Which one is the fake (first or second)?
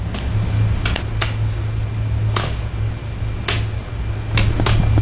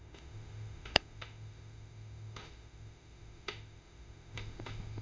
second